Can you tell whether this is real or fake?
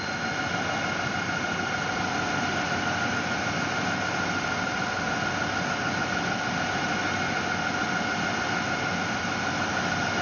real